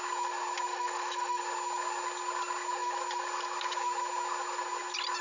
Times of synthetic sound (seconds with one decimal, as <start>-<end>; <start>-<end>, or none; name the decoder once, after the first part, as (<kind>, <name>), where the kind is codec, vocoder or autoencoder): 0.7-1.4 (autoencoder, DAC-VAE)